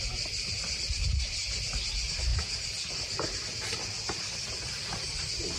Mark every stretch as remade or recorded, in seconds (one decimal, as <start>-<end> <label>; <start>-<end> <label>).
0.0-2.3 recorded; 2.3-2.9 remade; 2.9-5.6 recorded